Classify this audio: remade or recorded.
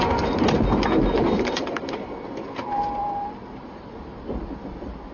recorded